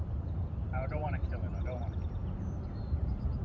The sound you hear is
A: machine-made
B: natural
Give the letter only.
A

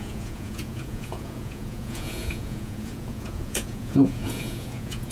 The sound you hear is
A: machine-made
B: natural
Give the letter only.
A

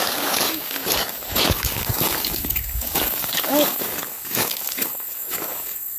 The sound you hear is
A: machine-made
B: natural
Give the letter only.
A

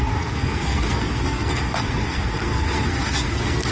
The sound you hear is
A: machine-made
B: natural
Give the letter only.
A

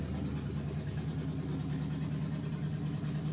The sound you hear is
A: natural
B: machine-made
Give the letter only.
A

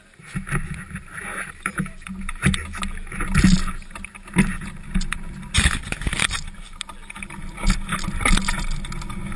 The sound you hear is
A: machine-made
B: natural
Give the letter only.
B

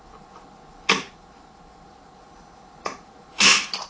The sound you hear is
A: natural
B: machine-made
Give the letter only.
A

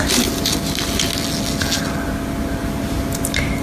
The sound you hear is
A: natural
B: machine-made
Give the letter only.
A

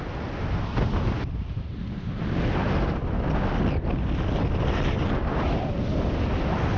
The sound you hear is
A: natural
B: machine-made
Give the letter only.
A